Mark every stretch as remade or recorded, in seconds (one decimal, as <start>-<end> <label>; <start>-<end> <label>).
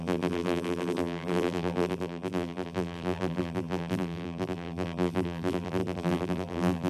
0.0-6.9 remade